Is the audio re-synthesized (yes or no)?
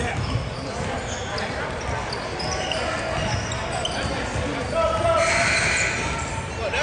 no